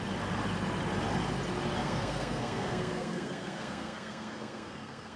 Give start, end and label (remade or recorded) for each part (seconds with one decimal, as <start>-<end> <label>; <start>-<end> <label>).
0.0-1.8 recorded; 1.8-5.2 remade